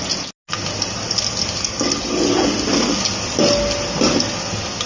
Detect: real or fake real